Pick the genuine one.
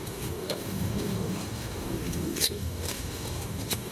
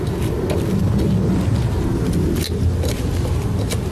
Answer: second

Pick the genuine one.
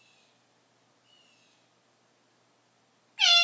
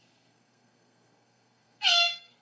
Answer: first